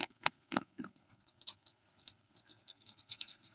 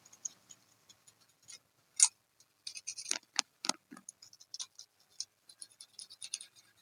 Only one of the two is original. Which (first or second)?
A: second